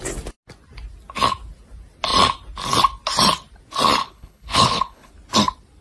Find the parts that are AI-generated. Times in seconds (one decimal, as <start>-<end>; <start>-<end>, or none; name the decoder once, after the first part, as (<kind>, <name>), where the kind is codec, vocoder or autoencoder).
4.0-5.1 (codec, HILCodec)